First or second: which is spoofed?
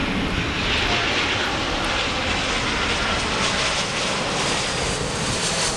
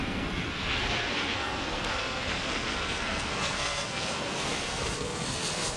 second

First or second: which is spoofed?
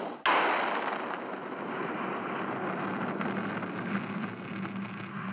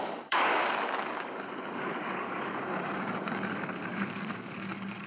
second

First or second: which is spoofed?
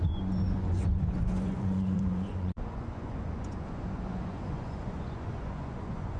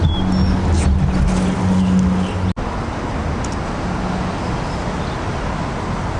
first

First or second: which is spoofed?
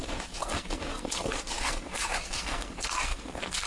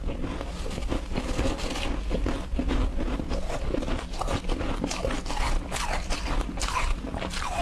first